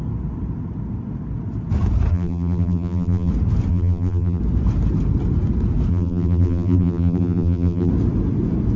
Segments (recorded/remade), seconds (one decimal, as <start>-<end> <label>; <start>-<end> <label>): 0.0-2.1 recorded; 2.1-3.3 remade; 3.3-3.7 recorded; 3.7-4.4 remade; 4.4-5.9 recorded; 5.9-7.9 remade; 7.9-8.8 recorded